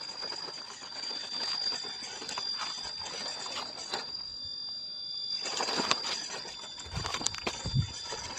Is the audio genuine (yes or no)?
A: yes